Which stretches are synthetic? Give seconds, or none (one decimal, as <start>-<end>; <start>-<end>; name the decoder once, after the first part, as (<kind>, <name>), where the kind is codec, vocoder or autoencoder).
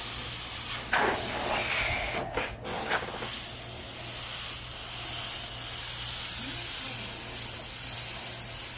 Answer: none